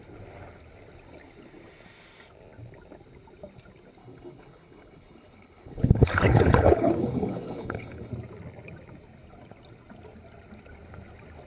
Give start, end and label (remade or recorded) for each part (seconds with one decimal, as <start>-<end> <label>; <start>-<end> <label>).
0.0-4.0 recorded; 4.0-8.1 remade; 8.1-11.5 recorded